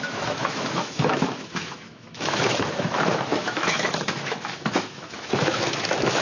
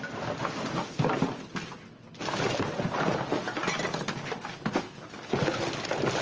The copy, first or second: first